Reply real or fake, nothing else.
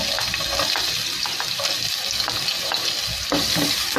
real